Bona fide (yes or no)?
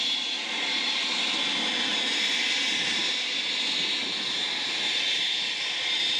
yes